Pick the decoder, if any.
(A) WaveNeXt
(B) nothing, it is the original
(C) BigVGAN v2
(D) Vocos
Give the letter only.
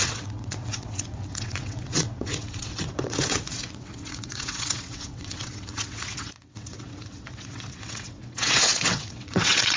A